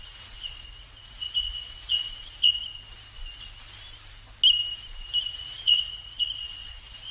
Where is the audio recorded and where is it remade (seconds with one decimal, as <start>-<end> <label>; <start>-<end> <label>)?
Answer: 0.0-2.5 remade; 2.5-5.3 recorded; 5.3-7.1 remade